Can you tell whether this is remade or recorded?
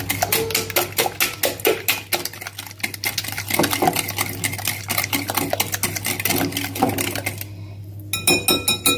recorded